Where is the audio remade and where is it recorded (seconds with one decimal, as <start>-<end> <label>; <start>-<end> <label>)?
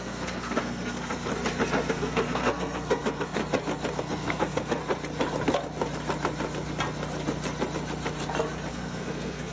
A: 0.0-1.3 remade; 1.3-1.9 recorded; 1.9-3.4 remade; 3.4-4.0 recorded; 4.0-4.8 remade; 4.8-8.7 recorded; 8.7-9.5 remade